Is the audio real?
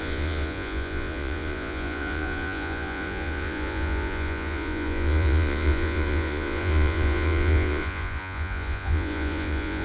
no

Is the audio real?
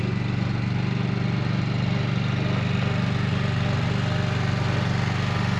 yes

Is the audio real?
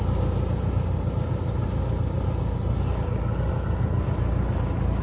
yes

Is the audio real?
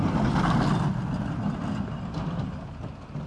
yes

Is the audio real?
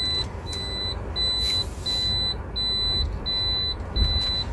yes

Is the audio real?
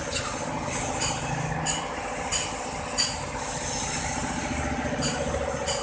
yes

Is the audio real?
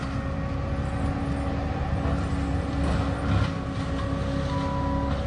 yes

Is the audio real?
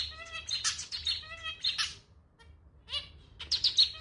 yes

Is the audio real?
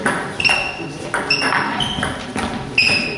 yes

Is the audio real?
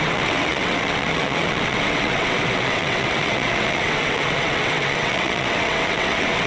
no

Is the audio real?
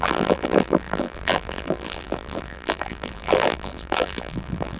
no